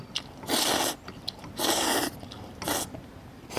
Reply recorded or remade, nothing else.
recorded